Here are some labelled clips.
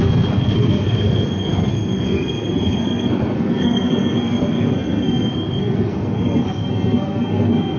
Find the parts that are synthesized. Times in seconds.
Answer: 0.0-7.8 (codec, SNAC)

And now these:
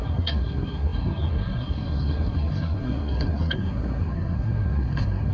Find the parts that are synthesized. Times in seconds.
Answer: 0.0-5.3 (codec, SNAC)

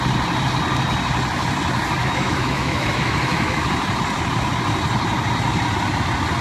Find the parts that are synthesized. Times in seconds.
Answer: 2.0-3.6 (autoencoder, DAC-VAE)

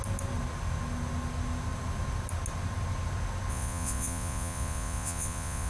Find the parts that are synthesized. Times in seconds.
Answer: 3.5-5.7 (vocoder, Vocos)

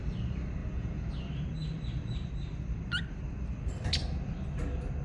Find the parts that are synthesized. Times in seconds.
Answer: 0.6-1.1 (vocoder, Vocos)

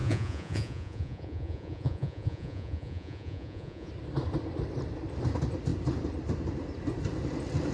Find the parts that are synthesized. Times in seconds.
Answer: 0.0-3.9 (vocoder, Vocos)

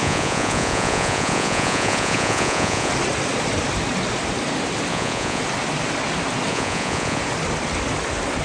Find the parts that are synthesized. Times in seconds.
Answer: 0.0-2.9 (vocoder, Vocos); 4.9-5.4; 6.5-7.2

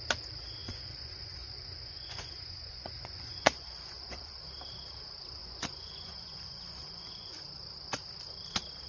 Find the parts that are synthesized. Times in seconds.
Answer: 0.6-4.4 (vocoder, Vocos); 5.4-7.4